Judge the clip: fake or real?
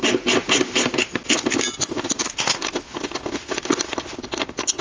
real